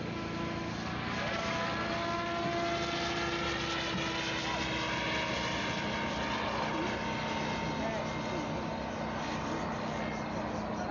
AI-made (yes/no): no